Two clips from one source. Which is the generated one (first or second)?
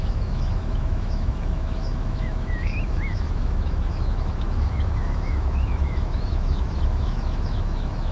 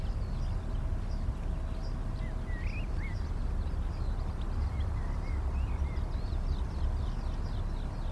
first